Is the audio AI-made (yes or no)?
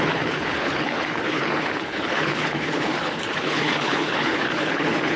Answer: yes